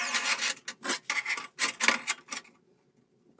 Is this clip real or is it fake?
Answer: real